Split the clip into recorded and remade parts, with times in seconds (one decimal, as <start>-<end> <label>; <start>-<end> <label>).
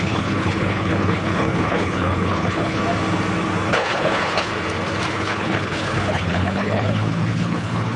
0.0-2.8 remade; 2.8-3.7 recorded; 3.7-4.5 remade; 4.5-5.1 recorded; 5.1-8.0 remade